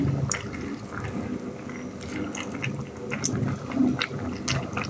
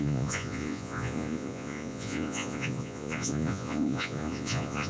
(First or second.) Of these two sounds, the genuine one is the first